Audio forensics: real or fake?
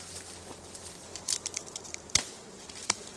fake